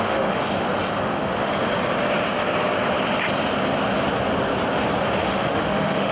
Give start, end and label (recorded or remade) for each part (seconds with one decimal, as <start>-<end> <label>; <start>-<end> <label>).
0.0-0.4 remade; 0.4-1.0 recorded; 1.0-1.5 remade; 1.5-5.2 recorded; 5.2-6.1 remade